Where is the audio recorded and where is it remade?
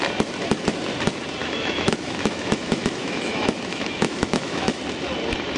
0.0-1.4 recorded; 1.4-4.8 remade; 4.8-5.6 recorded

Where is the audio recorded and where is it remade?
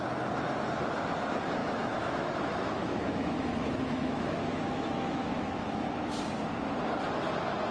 0.0-1.6 recorded; 1.6-6.2 remade; 6.2-7.7 recorded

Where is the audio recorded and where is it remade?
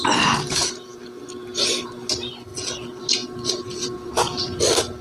0.0-5.0 recorded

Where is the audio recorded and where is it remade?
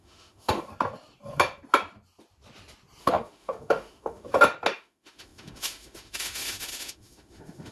0.0-0.7 remade; 0.7-3.0 recorded; 3.0-4.3 remade; 4.3-4.8 recorded; 4.8-7.7 remade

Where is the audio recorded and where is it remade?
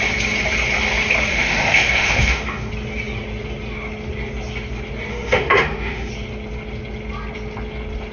0.0-1.3 recorded; 1.3-2.7 remade; 2.7-5.1 recorded; 5.1-6.1 remade; 6.1-8.1 recorded